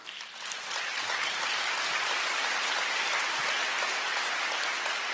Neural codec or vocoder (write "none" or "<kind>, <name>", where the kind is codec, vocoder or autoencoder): vocoder, BigVGAN v2